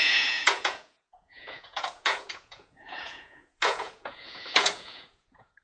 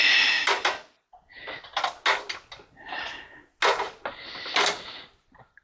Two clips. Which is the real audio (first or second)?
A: second